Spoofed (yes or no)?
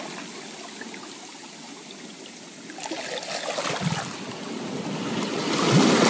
no